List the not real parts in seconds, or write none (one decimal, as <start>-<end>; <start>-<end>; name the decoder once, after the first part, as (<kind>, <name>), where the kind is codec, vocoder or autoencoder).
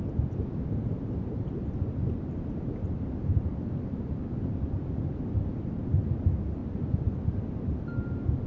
none